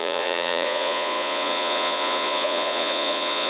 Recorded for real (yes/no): no